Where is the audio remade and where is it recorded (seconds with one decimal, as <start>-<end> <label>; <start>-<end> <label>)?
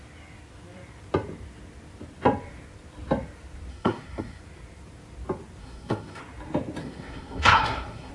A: 0.0-3.7 recorded; 3.7-4.4 remade; 4.4-5.6 recorded; 5.6-6.2 remade; 6.2-6.8 recorded; 6.8-8.1 remade